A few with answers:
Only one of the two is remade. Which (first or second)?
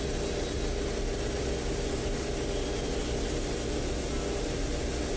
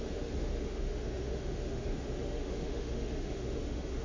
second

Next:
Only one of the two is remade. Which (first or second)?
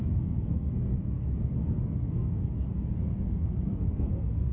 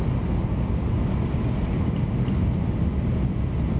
first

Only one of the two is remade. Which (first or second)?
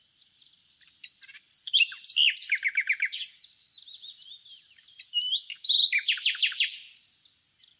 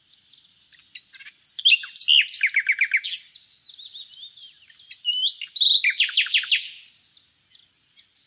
first